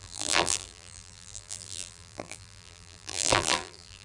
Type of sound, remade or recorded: remade